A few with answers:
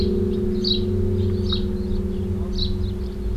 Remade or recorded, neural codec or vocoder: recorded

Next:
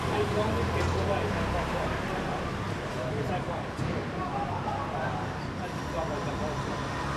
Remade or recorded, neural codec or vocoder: recorded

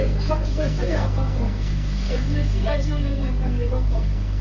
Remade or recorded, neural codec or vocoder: remade, codec, SNAC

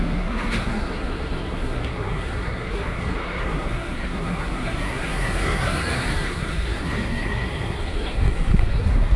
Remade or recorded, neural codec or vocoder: remade, codec, SNAC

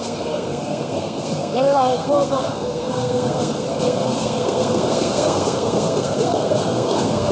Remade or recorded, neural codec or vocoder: remade, codec, SNAC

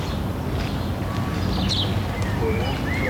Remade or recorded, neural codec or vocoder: recorded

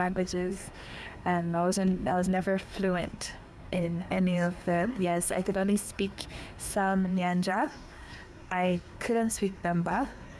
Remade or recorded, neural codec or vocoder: remade, codec, SNAC